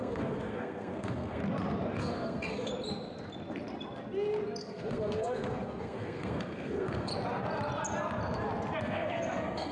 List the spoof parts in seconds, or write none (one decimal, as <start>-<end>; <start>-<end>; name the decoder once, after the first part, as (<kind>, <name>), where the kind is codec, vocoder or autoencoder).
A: 0.0-1.4 (codec, SNAC); 2.0-2.7; 4.6-7.1; 8.8-9.7